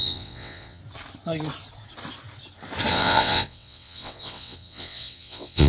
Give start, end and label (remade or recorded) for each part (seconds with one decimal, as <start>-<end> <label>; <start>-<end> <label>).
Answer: 0.0-0.8 remade; 0.8-2.9 recorded; 2.9-5.7 remade